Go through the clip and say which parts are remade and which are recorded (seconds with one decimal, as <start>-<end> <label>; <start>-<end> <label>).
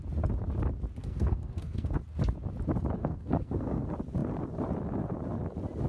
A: 0.0-1.0 recorded; 1.0-2.0 remade; 2.0-3.0 recorded; 3.0-3.8 remade; 3.8-5.9 recorded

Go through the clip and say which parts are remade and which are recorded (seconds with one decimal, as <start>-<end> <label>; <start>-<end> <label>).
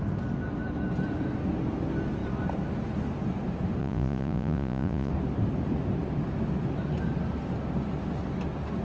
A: 0.0-3.8 recorded; 3.8-5.1 remade; 5.1-8.8 recorded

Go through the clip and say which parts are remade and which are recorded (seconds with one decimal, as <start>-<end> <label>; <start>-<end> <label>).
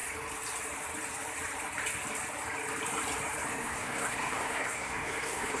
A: 0.0-3.5 recorded; 3.5-5.6 remade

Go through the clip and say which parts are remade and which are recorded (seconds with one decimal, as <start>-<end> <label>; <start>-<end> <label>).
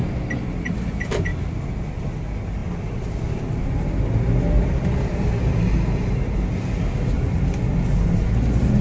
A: 0.0-8.8 recorded